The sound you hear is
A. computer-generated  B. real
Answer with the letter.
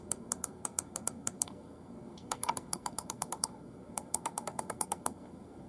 A